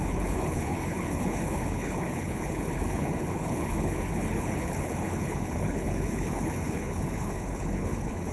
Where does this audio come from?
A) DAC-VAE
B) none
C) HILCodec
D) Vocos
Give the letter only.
C